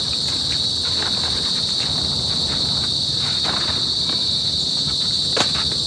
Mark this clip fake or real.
real